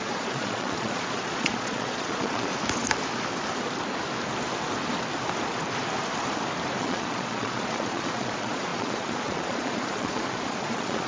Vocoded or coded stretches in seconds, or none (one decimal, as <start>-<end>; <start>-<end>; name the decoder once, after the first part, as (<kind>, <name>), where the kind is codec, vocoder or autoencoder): 0.0-2.5 (vocoder, Vocos); 6.8-11.1